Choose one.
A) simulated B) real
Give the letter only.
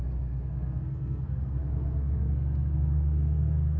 A